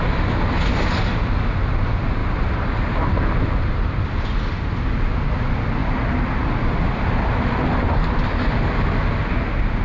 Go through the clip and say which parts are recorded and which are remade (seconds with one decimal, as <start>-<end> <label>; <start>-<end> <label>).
0.0-2.2 recorded; 2.2-4.2 remade; 4.2-5.8 recorded; 5.8-8.7 remade; 8.7-9.8 recorded